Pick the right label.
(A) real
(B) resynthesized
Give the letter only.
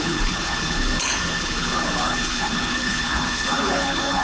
B